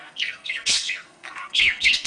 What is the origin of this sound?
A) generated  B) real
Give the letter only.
A